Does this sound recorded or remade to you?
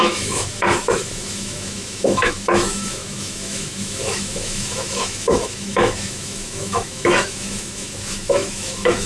remade